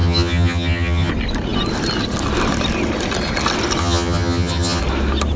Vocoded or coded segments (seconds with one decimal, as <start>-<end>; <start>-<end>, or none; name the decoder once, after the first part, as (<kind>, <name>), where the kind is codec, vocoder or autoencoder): 0.0-1.1 (vocoder, HiFi-GAN); 3.8-4.8